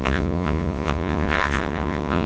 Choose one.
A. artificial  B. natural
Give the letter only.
A